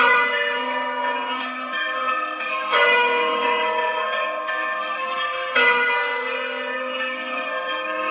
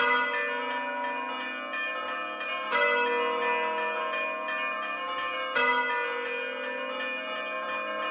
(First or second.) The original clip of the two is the second